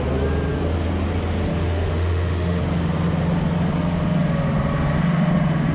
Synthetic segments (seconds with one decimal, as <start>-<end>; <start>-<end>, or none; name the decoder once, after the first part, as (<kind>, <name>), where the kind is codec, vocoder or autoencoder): 1.5-2.6 (autoencoder, DAC-VAE)